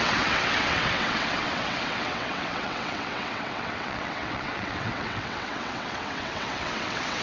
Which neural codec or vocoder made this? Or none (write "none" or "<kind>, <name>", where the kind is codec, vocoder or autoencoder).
vocoder, WaveNeXt